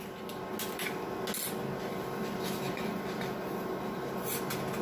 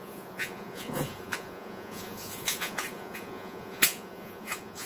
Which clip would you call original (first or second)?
first